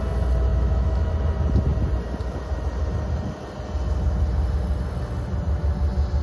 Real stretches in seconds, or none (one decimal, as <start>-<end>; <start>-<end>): 0.0-0.5; 1.1-6.2